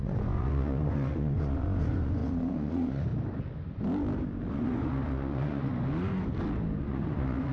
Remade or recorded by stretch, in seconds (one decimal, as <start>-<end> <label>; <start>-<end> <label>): 0.0-3.1 remade; 3.1-4.5 recorded; 4.5-5.7 remade; 5.7-6.8 recorded; 6.8-7.5 remade